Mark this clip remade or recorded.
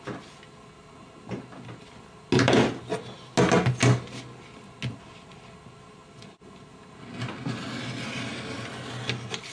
recorded